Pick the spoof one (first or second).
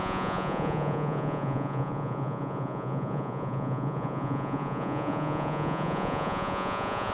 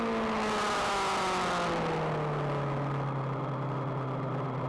first